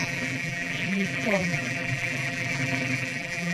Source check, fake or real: fake